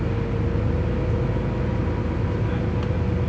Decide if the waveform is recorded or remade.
recorded